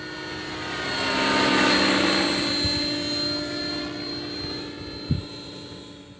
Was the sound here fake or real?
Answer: real